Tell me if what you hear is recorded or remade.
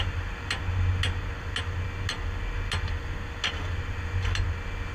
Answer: recorded